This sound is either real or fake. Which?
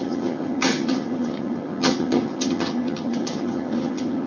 fake